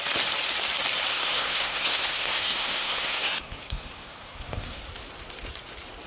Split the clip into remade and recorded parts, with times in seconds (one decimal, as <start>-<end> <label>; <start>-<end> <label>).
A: 0.0-1.1 recorded; 1.1-4.8 remade; 4.8-6.1 recorded